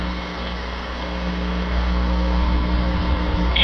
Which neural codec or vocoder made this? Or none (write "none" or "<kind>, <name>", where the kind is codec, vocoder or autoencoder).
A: codec, SNAC